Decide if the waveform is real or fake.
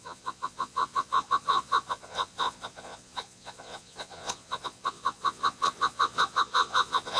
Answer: fake